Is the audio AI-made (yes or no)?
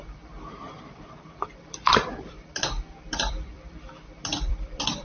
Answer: yes